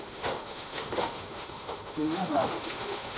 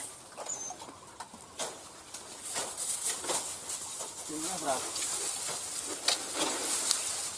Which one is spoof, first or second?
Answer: first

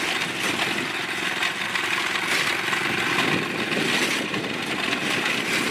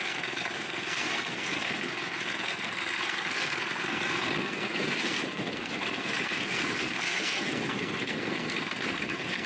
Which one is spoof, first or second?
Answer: second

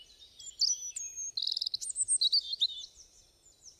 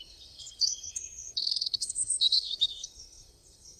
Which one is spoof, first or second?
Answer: second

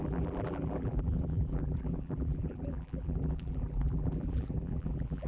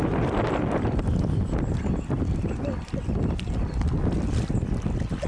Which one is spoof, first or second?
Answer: first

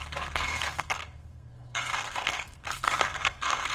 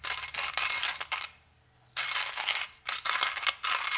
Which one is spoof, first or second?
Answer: first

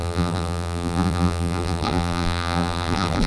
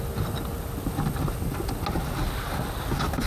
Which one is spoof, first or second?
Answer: first